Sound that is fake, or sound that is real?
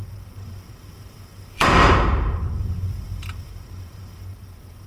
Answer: fake